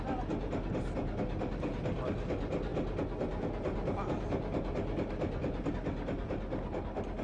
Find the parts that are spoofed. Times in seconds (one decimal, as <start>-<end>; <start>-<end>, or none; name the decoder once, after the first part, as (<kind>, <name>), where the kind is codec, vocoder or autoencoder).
none